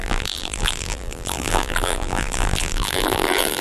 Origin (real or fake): fake